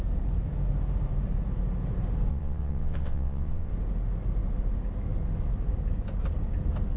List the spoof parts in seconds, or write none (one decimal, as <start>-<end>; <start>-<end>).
2.3-3.7